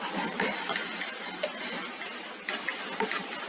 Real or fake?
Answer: real